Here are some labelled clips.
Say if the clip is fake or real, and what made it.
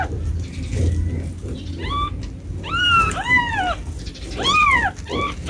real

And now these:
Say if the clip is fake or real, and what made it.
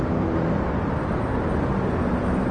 real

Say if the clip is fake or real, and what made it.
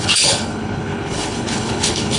fake, codec, HILCodec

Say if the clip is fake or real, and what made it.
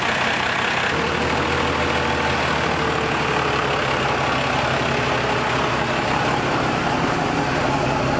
real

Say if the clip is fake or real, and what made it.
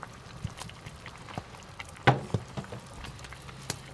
real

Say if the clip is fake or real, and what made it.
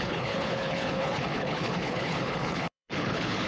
fake, codec, HILCodec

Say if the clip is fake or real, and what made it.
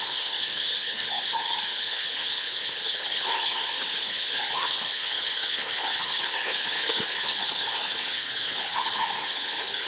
fake, codec, HILCodec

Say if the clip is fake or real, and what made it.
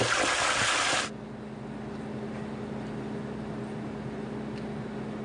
real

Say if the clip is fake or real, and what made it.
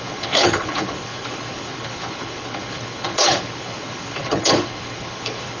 fake, codec, HILCodec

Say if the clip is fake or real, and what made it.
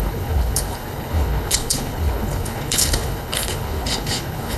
fake, codec, HILCodec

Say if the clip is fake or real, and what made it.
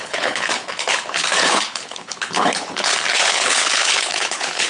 fake, codec, HILCodec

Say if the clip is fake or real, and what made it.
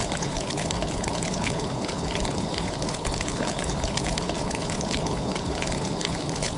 fake, codec, HILCodec